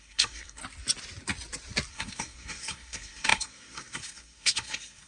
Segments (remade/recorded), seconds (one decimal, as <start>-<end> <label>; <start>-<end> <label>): 0.0-0.6 remade; 0.6-1.9 recorded; 1.9-5.1 remade